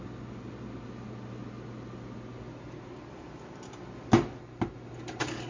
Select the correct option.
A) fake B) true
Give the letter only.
B